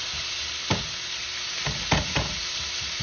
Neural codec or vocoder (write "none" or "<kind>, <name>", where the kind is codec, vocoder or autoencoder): none